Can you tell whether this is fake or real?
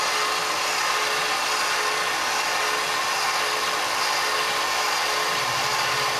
real